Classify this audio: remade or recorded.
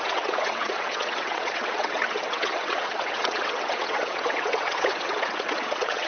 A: remade